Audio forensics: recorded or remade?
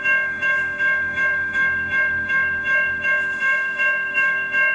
remade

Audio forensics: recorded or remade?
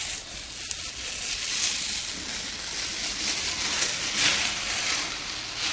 recorded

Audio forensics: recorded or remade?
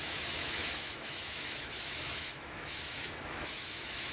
remade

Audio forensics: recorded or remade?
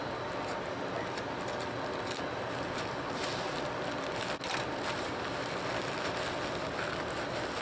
recorded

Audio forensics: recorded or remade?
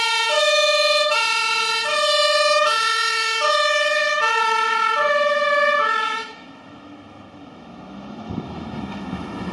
remade